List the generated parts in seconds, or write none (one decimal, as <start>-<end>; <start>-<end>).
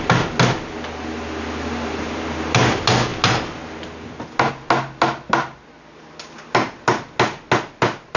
none